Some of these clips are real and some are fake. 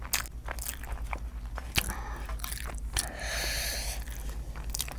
real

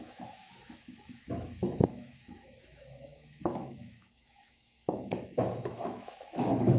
fake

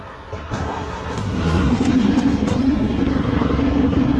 fake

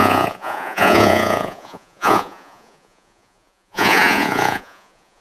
fake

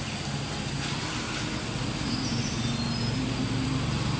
real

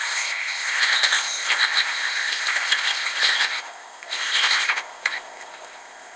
fake